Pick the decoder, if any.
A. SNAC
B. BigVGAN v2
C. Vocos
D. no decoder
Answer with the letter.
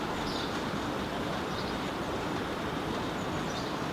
B